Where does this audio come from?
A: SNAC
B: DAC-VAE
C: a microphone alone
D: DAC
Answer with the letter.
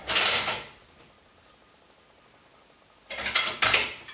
C